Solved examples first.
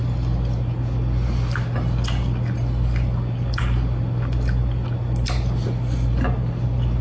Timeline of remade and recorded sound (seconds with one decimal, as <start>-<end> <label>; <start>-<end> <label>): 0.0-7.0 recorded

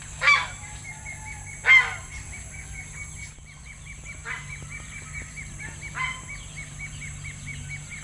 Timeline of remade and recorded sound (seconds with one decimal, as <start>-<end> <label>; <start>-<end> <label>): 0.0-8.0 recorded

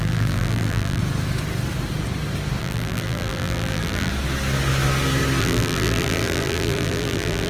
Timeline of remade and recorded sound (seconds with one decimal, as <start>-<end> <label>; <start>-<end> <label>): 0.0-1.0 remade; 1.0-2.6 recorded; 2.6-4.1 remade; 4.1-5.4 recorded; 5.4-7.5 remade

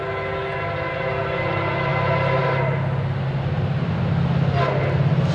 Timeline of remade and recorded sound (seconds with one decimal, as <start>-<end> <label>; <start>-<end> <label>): 0.0-5.3 recorded